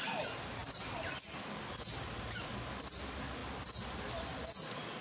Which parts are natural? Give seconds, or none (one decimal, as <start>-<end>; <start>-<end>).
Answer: 0.0-5.0